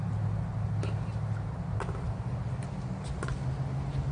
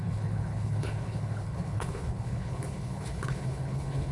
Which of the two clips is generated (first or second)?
second